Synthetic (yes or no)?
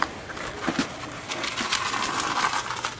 no